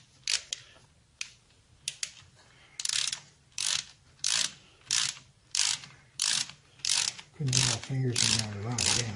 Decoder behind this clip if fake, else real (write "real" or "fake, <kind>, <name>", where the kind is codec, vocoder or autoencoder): real